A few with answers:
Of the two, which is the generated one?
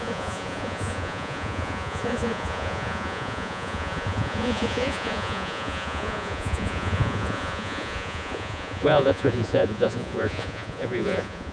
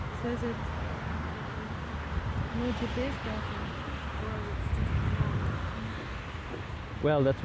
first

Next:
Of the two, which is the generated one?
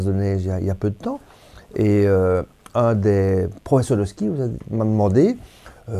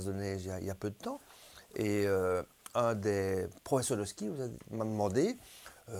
second